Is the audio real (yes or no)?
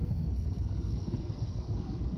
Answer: no